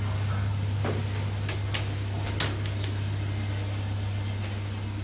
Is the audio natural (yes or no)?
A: yes